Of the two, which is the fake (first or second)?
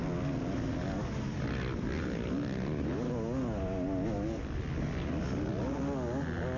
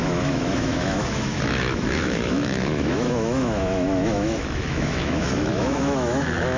second